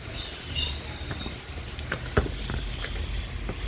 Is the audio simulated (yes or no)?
no